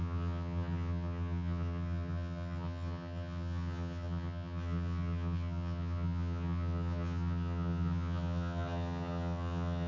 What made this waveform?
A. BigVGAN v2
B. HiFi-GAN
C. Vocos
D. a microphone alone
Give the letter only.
B